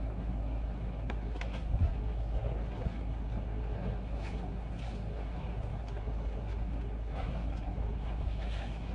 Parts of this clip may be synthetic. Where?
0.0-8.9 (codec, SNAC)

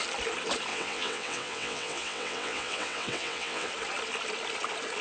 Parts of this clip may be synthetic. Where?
0.7-3.7 (vocoder, WaveNeXt)

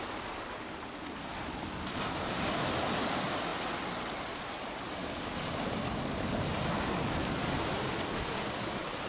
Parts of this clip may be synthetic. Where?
5.0-5.6 (codec, DAC)

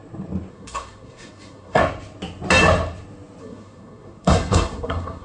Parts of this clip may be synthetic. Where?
0.5-1.8 (codec, SNAC); 3.4-5.2